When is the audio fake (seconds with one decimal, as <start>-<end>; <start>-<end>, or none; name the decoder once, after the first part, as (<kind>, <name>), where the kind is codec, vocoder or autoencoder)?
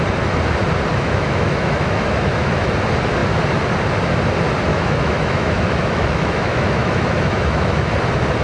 0.9-2.6 (autoencoder, DAC-VAE); 4.7-7.9